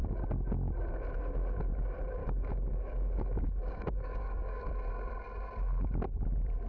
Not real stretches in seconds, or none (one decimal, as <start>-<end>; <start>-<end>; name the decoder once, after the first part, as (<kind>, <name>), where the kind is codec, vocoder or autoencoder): 2.2-4.7 (codec, DAC)